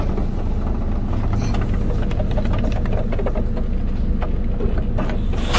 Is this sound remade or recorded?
recorded